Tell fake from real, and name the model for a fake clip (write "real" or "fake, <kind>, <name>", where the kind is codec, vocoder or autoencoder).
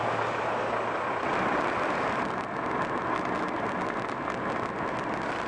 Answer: real